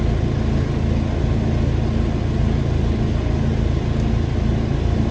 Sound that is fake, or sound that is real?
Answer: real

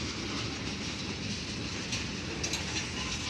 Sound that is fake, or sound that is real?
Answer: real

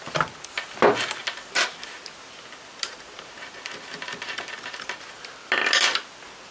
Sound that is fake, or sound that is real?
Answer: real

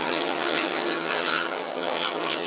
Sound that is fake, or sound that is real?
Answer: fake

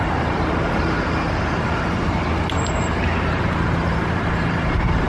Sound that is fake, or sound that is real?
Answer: fake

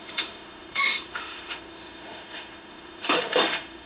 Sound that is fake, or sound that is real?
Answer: fake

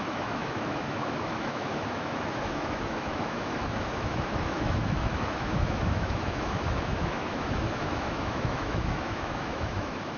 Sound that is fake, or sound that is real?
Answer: fake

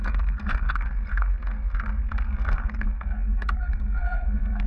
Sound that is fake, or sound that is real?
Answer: fake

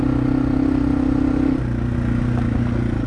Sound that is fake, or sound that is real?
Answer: real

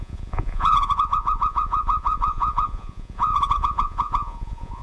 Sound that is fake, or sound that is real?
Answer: fake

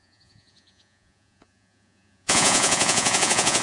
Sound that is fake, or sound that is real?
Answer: fake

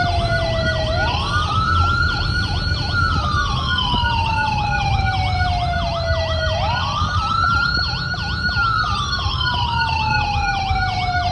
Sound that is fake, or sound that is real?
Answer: real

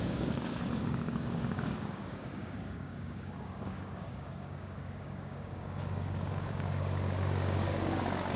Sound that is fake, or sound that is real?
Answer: fake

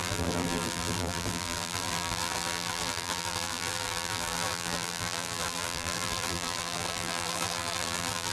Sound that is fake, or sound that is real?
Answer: fake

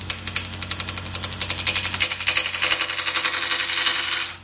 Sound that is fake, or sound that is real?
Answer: real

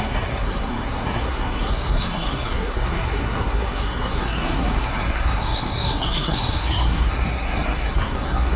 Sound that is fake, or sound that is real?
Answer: fake